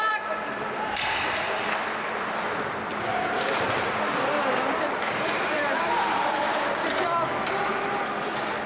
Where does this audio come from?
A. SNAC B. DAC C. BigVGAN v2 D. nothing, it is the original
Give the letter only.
C